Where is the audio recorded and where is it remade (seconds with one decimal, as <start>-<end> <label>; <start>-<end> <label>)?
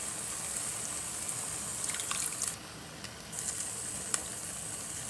0.0-5.1 recorded